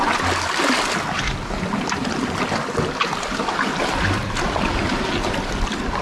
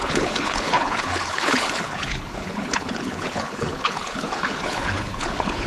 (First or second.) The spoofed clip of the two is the second